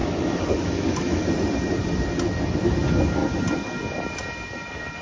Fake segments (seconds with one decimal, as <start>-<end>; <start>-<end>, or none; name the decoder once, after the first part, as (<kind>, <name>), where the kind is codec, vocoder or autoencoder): 0.0-1.2 (autoencoder, DAC-VAE)